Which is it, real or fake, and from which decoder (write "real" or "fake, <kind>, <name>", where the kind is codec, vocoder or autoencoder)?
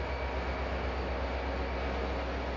real